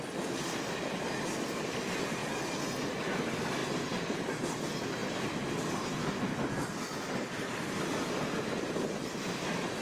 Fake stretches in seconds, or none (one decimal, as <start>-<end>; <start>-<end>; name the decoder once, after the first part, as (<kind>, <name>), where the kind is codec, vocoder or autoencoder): 8.9-9.8 (vocoder, BigVGAN v2)